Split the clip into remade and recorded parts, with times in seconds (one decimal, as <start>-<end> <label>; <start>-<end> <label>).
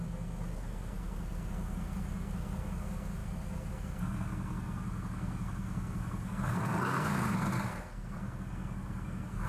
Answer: 0.0-9.5 remade